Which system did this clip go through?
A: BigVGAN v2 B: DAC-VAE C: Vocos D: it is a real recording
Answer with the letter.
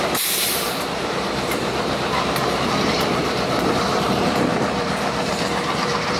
A